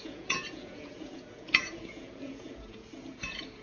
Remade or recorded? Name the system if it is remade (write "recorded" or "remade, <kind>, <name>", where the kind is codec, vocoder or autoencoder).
remade, vocoder, Vocos